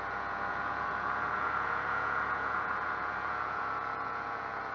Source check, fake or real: fake